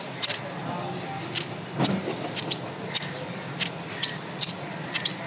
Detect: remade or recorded recorded